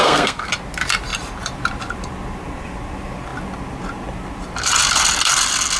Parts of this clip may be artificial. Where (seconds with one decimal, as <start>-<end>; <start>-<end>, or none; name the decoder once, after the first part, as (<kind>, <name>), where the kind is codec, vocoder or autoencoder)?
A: 0.0-0.5 (codec, SNAC)